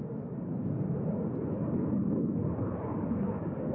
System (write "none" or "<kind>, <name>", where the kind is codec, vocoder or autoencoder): none